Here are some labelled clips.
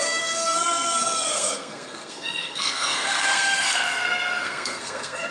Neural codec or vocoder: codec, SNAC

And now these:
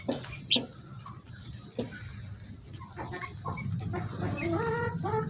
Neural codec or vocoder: none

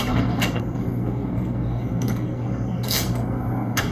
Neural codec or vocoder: codec, SNAC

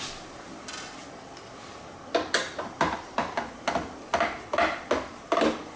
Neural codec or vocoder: none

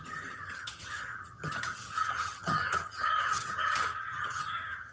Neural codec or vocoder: vocoder, HiFi-GAN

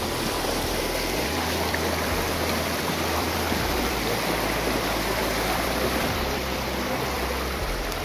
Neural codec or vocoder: vocoder, BigVGAN v2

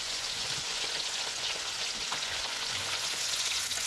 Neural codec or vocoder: vocoder, Vocos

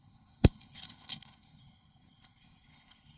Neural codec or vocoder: codec, HILCodec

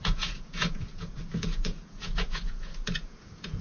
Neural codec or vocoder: vocoder, Vocos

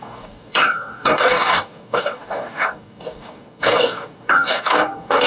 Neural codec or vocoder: codec, DAC